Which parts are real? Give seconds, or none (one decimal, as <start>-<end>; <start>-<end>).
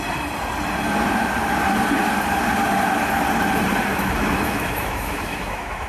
0.0-3.9